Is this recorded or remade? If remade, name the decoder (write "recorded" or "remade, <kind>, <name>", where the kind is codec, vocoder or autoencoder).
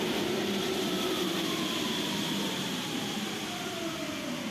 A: recorded